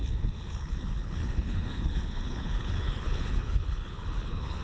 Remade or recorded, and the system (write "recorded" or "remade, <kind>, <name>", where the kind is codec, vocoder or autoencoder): remade, codec, HILCodec